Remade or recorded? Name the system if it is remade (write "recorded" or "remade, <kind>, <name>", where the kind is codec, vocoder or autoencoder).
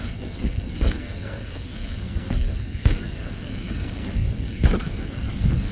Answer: remade, codec, SNAC